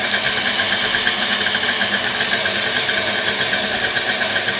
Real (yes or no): yes